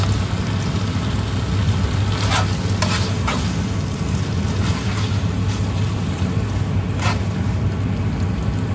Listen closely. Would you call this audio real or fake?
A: real